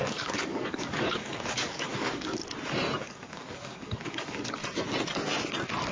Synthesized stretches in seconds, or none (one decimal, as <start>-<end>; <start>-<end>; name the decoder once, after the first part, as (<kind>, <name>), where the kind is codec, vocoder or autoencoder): 0.0-2.4 (codec, DAC); 3.0-4.6